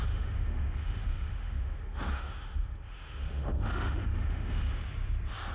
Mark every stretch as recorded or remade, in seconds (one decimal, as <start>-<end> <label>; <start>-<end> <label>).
0.0-4.8 remade; 4.8-5.5 recorded